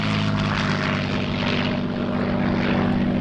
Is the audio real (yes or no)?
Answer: yes